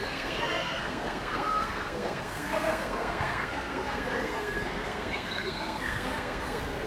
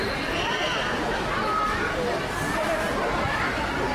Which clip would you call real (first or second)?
second